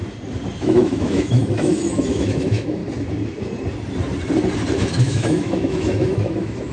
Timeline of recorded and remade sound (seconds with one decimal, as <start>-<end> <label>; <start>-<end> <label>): 0.0-0.6 recorded; 0.6-2.8 remade; 2.8-4.7 recorded; 4.7-6.7 remade